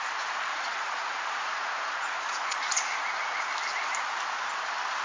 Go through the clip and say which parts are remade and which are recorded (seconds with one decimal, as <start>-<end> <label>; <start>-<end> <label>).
0.0-0.5 recorded; 0.5-3.5 remade; 3.5-5.0 recorded